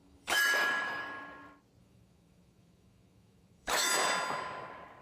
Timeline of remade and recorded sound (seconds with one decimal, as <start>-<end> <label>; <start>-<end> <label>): 0.0-1.0 remade; 1.0-1.8 recorded; 1.8-3.9 remade; 3.9-5.0 recorded